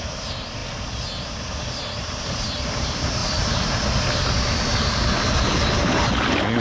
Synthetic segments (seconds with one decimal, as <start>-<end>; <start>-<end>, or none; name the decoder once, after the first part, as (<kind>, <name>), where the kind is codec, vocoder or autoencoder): 0.0-0.6 (vocoder, BigVGAN v2); 2.3-3.2